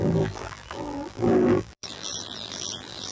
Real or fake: fake